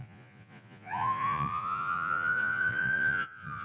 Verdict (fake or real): fake